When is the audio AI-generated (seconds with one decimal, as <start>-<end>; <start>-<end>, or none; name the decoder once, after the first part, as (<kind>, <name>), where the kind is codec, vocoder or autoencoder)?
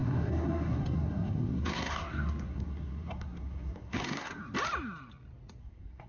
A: 0.0-4.4 (codec, SNAC); 5.6-6.1